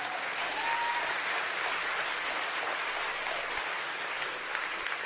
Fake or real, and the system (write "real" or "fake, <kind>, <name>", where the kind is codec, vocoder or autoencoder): real